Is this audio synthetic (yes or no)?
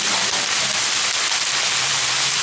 no